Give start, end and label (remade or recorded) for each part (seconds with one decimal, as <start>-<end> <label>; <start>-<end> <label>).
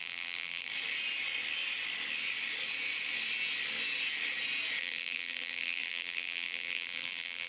0.0-0.7 remade; 0.7-4.8 recorded; 4.8-7.5 remade